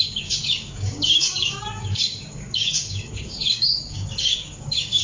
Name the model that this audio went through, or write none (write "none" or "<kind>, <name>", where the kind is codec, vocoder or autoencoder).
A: codec, DAC